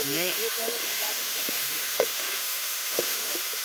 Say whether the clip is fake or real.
fake